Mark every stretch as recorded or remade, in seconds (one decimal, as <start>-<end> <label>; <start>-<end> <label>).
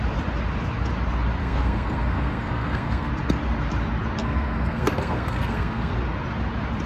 0.0-1.4 recorded; 1.4-3.1 remade; 3.1-4.2 recorded; 4.2-5.9 remade; 5.9-6.9 recorded